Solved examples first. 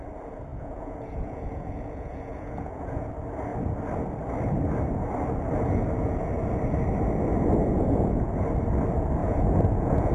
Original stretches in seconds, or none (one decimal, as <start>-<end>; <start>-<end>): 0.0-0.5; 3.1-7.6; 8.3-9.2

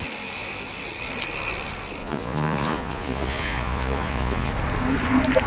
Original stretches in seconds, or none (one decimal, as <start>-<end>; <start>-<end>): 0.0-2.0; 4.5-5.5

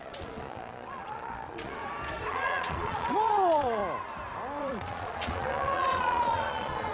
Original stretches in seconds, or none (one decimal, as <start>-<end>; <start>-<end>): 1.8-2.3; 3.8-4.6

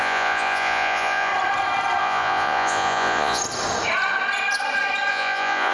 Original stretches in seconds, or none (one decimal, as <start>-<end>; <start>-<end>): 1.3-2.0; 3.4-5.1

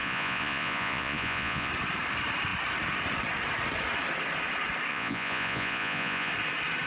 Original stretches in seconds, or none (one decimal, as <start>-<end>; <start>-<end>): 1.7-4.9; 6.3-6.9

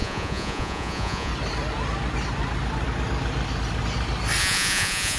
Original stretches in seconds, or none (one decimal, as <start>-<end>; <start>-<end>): 1.3-4.4